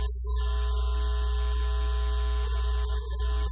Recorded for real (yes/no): yes